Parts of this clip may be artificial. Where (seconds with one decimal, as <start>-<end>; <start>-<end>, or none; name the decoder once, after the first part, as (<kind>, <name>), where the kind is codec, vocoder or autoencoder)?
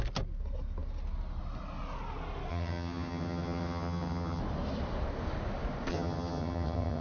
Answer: 2.5-4.4 (vocoder, HiFi-GAN); 5.9-7.0